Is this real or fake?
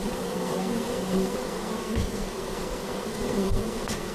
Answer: fake